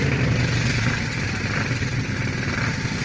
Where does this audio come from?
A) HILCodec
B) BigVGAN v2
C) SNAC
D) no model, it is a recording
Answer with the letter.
D